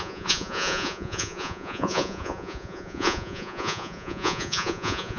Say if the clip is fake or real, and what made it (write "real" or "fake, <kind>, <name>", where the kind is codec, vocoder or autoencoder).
fake, vocoder, Vocos